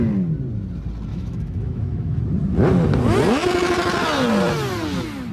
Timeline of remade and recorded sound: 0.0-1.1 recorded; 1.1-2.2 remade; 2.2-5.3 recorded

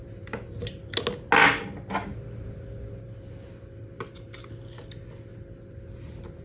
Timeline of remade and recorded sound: 0.0-6.4 recorded

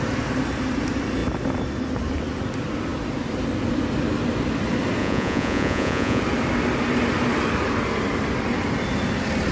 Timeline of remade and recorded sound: 0.0-5.0 recorded; 5.0-6.2 remade; 6.2-9.5 recorded